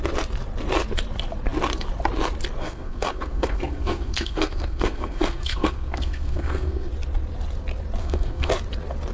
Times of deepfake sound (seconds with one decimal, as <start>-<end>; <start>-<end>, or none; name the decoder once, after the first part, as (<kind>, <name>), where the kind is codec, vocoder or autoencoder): 2.6-6.9 (codec, SNAC); 8.0-8.5